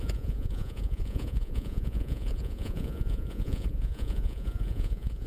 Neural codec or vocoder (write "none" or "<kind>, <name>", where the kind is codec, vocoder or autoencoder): vocoder, Vocos